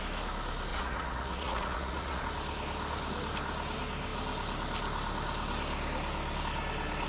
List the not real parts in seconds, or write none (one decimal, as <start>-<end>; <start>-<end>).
0.7-2.2